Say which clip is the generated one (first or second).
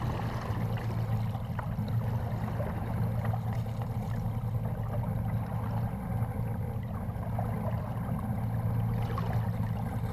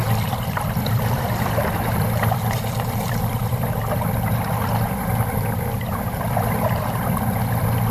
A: second